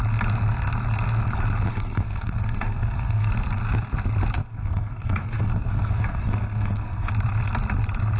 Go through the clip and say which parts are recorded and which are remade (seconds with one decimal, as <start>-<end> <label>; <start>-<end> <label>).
0.0-1.7 recorded; 1.7-3.3 remade; 3.3-4.4 recorded; 4.4-7.1 remade; 7.1-8.2 recorded

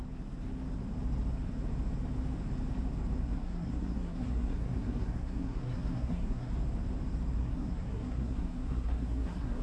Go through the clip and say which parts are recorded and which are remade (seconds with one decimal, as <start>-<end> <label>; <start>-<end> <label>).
0.0-3.2 recorded; 3.2-6.5 remade; 6.5-7.4 recorded; 7.4-9.6 remade

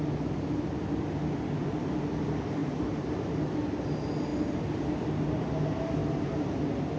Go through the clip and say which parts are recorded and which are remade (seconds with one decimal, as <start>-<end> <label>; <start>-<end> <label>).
0.0-2.6 recorded; 2.6-3.1 remade; 3.1-7.0 recorded

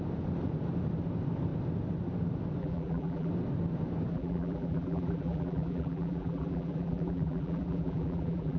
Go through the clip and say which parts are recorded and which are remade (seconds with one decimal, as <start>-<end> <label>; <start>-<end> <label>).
0.0-2.6 recorded; 2.6-3.3 remade; 3.3-4.1 recorded; 4.1-8.6 remade

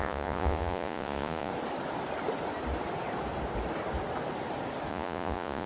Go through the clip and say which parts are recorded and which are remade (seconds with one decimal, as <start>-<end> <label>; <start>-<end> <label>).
0.0-1.5 remade; 1.5-4.9 recorded; 4.9-5.7 remade